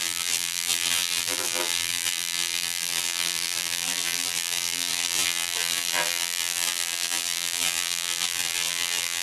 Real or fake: fake